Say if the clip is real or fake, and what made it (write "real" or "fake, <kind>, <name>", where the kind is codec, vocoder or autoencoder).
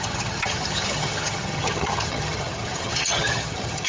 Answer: fake, vocoder, HiFi-GAN